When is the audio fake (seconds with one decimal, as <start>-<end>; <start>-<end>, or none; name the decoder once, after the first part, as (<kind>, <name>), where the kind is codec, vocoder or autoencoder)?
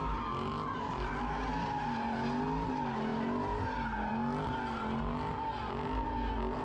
none